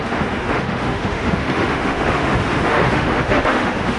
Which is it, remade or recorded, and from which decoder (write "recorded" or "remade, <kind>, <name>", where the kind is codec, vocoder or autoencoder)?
remade, autoencoder, DAC-VAE